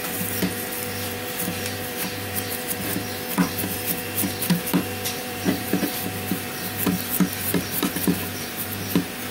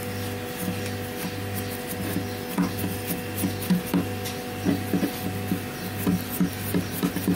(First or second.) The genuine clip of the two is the second